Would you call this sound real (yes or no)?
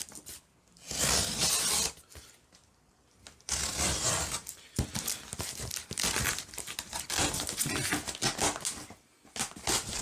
yes